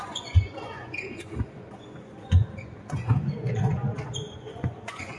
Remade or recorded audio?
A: remade